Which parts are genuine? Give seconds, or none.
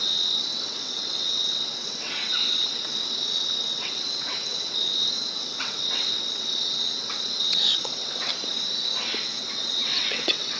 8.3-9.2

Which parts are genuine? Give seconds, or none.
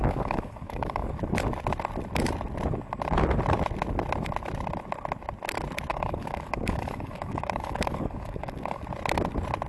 1.1-5.9; 8.8-9.7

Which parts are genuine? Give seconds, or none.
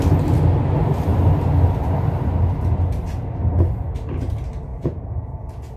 0.0-4.7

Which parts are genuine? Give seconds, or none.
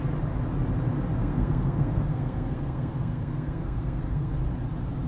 0.0-1.2; 4.3-5.1